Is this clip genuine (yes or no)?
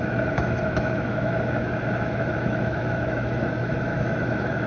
no